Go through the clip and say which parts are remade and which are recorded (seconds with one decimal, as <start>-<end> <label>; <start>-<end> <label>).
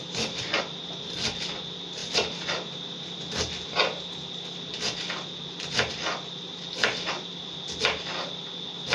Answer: 0.0-8.9 recorded